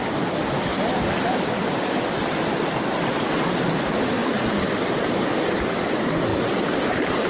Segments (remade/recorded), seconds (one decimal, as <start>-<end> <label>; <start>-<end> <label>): 0.0-0.7 recorded; 0.7-1.6 remade; 1.6-4.2 recorded; 4.2-5.6 remade; 5.6-6.3 recorded; 6.3-7.3 remade